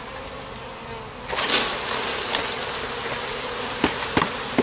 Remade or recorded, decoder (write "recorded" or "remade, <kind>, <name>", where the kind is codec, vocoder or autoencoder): recorded